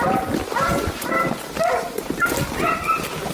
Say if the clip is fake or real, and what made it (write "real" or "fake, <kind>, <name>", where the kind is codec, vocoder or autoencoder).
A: real